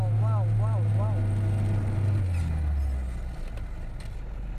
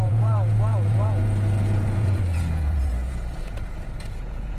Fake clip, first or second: second